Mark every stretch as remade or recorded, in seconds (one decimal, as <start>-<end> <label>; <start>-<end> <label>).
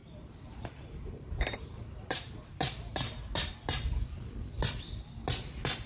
0.0-3.5 remade; 3.5-5.9 recorded